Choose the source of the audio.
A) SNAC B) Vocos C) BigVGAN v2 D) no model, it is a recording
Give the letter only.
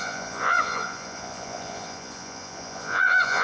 B